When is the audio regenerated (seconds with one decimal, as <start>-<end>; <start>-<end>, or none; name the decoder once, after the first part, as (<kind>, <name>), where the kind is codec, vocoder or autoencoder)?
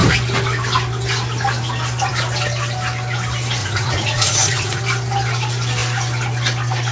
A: 3.6-4.8 (vocoder, Vocos)